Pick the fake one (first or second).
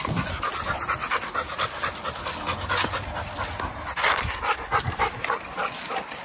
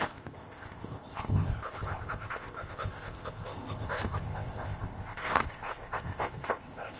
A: second